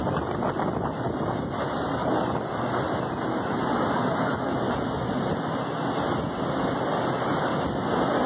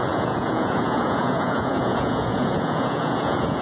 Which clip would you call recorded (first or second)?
first